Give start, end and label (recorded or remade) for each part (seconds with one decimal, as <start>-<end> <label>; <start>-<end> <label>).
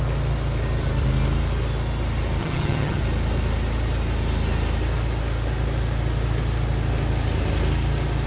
0.0-2.4 recorded; 2.4-3.0 remade; 3.0-8.3 recorded